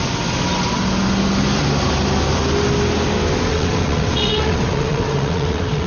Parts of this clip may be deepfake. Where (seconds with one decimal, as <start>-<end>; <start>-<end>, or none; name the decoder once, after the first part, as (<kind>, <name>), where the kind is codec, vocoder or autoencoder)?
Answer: 3.5-5.9 (vocoder, WaveNeXt)